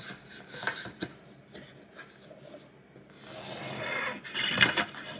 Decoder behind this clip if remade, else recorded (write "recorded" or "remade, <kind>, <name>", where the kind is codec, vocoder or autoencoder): recorded